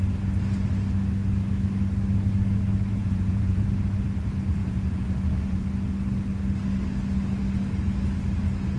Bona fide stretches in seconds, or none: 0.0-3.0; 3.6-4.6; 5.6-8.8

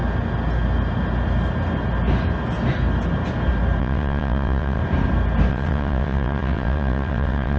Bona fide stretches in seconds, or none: 0.0-3.8; 4.8-5.5

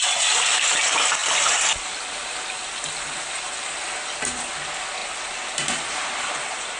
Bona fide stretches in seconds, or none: 0.0-6.8